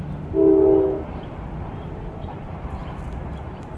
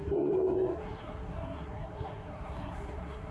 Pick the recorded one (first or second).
first